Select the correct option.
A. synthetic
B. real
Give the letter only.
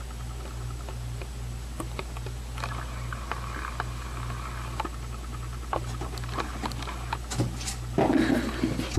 B